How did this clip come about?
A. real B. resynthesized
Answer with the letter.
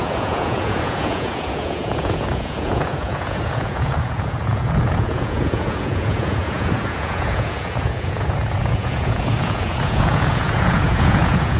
B